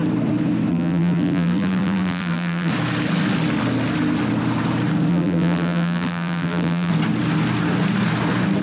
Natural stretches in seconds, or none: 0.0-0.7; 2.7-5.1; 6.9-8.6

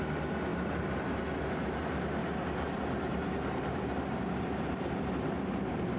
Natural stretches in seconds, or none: 0.0-0.5; 1.2-2.2

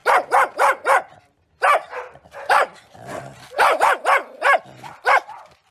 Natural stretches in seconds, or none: 1.2-1.7; 2.2-4.2; 4.9-5.7

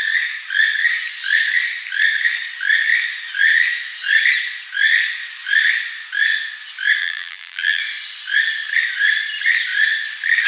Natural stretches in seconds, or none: 0.0-7.0; 7.8-10.5